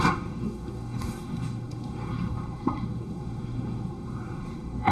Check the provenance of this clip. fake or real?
fake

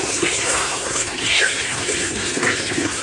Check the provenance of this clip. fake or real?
fake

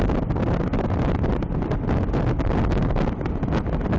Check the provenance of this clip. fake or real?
real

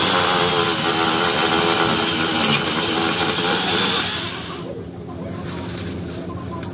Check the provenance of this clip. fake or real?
real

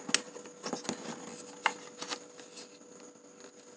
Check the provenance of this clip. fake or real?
real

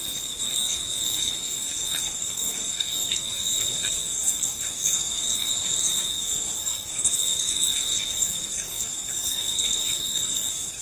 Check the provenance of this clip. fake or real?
fake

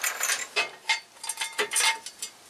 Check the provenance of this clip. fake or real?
real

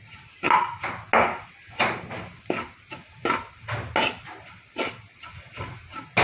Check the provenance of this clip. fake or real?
real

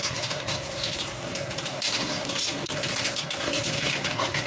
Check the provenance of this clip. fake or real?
fake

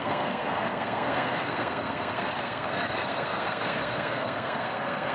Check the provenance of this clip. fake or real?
fake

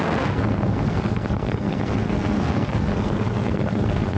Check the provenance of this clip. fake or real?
fake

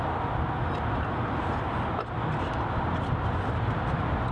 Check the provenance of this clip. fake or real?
real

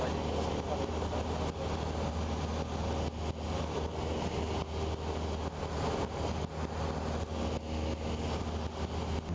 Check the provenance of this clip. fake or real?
real